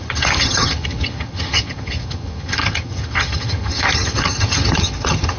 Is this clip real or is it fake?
fake